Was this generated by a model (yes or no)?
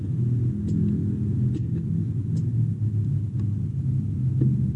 no